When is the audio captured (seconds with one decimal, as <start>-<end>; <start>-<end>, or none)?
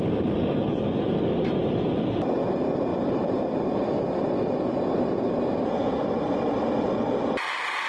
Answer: 0.0-7.9